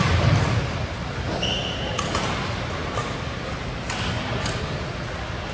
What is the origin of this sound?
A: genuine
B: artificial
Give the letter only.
A